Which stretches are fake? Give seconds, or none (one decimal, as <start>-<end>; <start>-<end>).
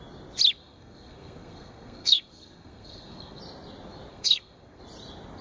0.6-3.4; 4.1-4.8